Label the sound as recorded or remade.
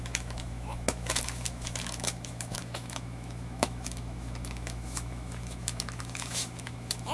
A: remade